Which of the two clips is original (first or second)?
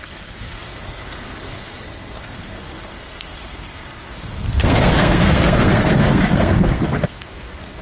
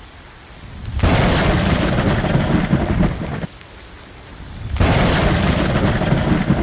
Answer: second